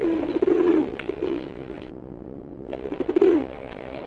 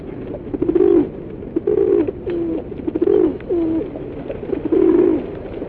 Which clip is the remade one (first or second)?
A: first